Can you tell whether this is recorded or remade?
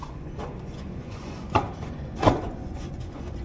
remade